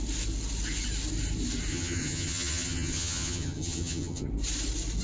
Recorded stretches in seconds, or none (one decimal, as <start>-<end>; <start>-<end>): 0.0-1.7; 4.3-5.0